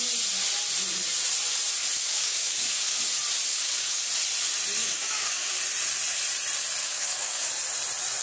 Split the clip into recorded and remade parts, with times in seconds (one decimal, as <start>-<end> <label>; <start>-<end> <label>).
0.0-2.0 recorded; 2.0-3.0 remade; 3.0-3.5 recorded; 3.5-4.0 remade; 4.0-4.8 recorded; 4.8-5.6 remade; 5.6-6.8 recorded; 6.8-7.5 remade; 7.5-8.2 recorded